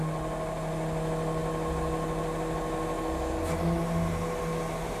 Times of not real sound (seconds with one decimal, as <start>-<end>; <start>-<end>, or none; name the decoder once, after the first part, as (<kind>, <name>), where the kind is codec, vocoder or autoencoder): none